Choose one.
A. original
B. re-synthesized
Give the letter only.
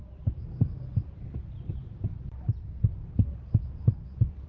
A